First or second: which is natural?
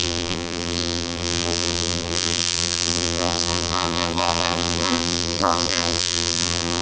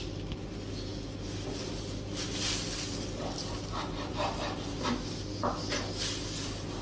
second